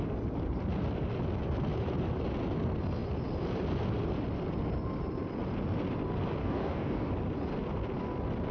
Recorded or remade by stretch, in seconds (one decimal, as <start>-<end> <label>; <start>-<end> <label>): 0.0-6.4 recorded; 6.4-7.1 remade; 7.1-8.5 recorded